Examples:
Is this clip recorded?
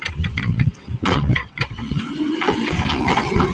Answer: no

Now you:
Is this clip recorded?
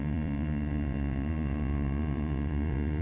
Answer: no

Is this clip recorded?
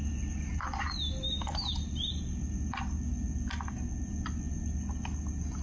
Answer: yes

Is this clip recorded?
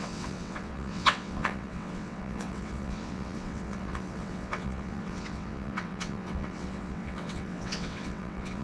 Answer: no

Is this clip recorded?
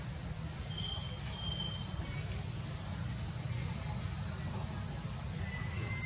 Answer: yes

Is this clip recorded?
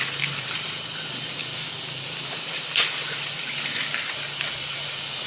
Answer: yes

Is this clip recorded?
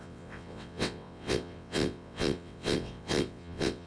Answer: no